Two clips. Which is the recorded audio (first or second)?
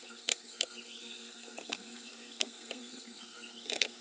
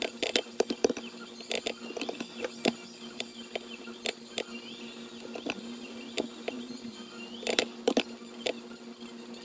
second